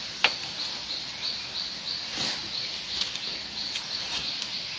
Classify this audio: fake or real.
real